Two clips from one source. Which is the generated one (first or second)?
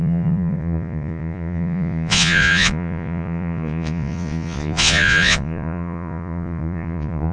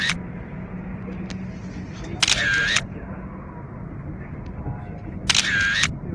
first